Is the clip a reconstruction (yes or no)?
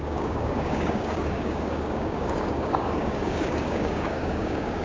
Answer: yes